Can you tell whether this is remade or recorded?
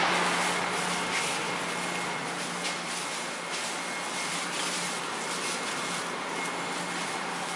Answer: recorded